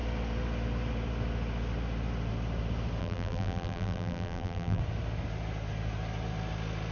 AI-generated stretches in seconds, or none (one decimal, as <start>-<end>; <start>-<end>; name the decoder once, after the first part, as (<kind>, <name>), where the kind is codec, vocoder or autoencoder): 3.0-4.8 (vocoder, BigVGAN v2)

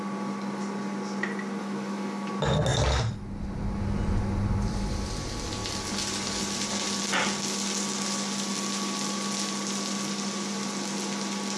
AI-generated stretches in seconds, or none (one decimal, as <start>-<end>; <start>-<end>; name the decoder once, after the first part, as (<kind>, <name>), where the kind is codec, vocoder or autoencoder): 1.6-2.3 (autoencoder, DAC-VAE)

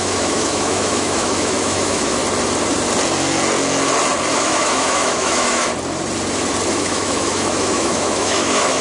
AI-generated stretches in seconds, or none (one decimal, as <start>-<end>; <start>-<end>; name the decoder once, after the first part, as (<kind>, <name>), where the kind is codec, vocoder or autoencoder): 0.0-2.2 (autoencoder, DAC-VAE); 4.3-5.7; 6.7-8.8

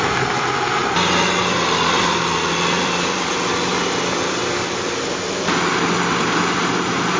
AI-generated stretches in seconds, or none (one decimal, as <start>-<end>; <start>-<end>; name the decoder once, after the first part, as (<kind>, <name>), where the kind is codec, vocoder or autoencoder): 0.0-0.8 (vocoder, BigVGAN v2); 2.8-7.2